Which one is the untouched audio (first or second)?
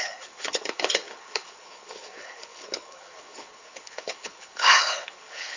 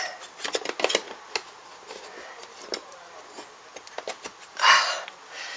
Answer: second